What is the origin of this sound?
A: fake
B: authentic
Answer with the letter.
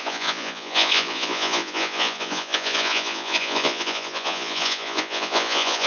A